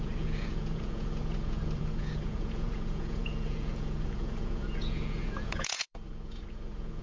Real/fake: fake